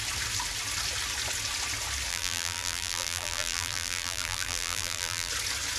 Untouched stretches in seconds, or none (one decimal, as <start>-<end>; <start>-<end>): 0.0-2.1; 5.3-5.8